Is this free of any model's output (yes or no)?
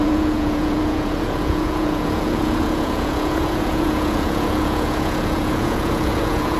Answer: no